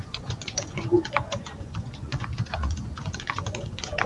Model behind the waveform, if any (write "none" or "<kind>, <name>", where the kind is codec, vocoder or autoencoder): vocoder, Vocos